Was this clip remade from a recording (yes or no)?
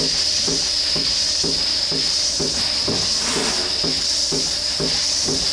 yes